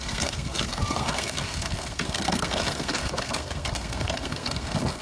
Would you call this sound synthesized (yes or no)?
yes